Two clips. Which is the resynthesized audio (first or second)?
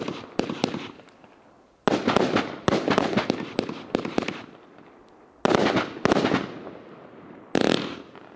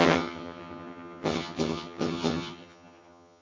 second